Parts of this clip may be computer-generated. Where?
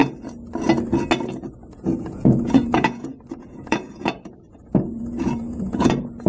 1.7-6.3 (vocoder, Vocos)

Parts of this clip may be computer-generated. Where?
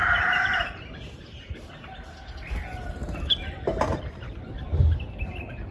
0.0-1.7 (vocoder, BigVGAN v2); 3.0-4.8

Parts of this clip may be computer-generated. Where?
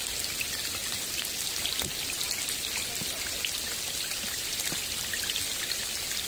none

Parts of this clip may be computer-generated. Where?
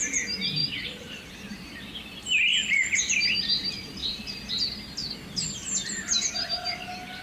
0.6-1.3 (vocoder, BigVGAN v2); 2.5-3.1; 4.0-4.5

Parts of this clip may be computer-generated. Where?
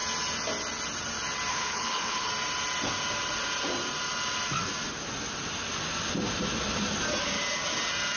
1.5-2.3 (codec, HILCodec)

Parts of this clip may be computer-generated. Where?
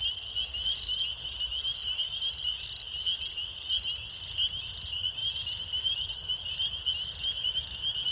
none